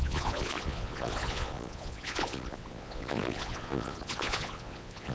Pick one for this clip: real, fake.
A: fake